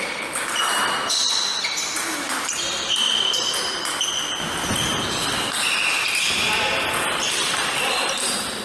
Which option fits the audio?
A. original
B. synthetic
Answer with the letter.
B